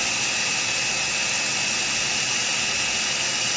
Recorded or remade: recorded